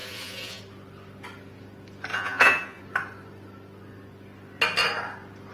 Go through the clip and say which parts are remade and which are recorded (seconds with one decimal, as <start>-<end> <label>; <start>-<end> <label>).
0.0-0.6 remade; 0.6-2.1 recorded; 2.1-2.8 remade; 2.8-5.5 recorded